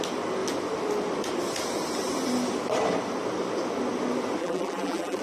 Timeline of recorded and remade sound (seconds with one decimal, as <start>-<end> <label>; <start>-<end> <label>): 0.0-4.4 recorded; 4.4-5.2 remade